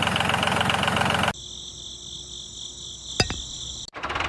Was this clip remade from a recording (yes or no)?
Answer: no